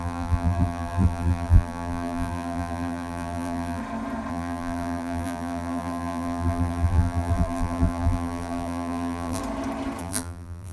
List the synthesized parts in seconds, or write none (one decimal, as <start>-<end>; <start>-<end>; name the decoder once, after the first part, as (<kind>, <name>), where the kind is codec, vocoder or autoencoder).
0.0-3.8 (vocoder, BigVGAN v2); 4.3-9.4; 10.0-10.7